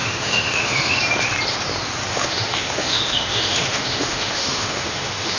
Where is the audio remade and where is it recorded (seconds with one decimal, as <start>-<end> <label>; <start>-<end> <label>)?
0.0-1.0 remade; 1.0-2.1 recorded; 2.1-5.4 remade

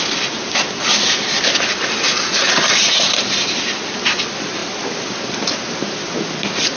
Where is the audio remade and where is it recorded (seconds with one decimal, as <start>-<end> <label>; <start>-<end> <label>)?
0.0-2.1 recorded; 2.1-2.9 remade; 2.9-6.8 recorded

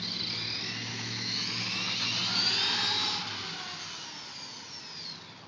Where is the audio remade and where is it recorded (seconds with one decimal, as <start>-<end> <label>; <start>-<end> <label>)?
0.0-0.9 recorded; 0.9-1.6 remade; 1.6-5.5 recorded

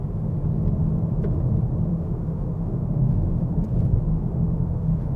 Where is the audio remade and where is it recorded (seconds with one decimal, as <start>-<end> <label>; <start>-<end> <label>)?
0.0-1.9 recorded; 1.9-3.4 remade; 3.4-4.1 recorded; 4.1-5.2 remade

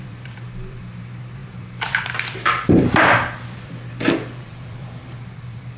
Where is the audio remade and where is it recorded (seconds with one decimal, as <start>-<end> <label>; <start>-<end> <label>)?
0.0-5.8 remade

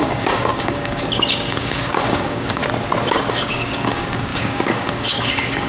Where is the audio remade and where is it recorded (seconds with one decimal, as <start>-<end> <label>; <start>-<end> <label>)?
0.0-2.6 remade; 2.6-3.3 recorded; 3.3-5.7 remade

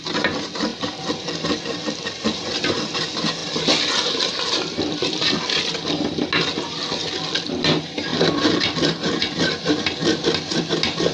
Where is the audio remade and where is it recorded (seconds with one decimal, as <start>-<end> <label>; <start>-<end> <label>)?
0.0-0.7 recorded; 0.7-2.6 remade; 2.6-8.1 recorded; 8.1-9.1 remade; 9.1-11.1 recorded